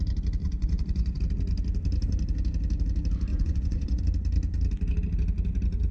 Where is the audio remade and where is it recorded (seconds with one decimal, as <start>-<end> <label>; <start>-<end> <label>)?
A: 0.0-0.4 recorded; 0.4-1.2 remade; 1.2-3.3 recorded; 3.3-4.0 remade; 4.0-5.9 recorded